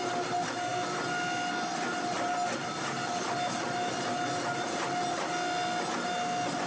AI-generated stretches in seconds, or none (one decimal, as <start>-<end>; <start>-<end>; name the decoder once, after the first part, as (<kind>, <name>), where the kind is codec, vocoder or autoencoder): none